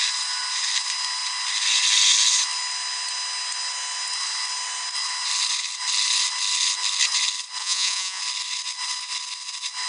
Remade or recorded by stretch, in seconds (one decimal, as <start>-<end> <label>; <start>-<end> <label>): 0.0-7.6 recorded; 7.6-8.2 remade; 8.2-9.9 recorded